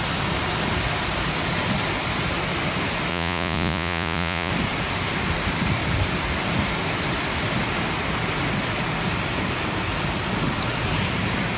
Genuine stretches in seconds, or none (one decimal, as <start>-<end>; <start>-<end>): 0.0-3.1; 4.5-11.6